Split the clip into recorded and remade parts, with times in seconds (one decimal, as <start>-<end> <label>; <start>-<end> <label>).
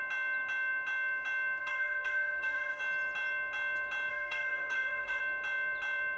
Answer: 0.0-1.6 recorded; 1.6-2.8 remade; 2.8-4.1 recorded; 4.1-5.2 remade; 5.2-6.2 recorded